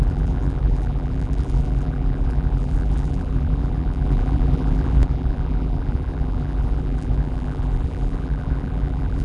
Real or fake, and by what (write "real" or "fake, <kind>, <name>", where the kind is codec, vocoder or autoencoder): fake, vocoder, BigVGAN v2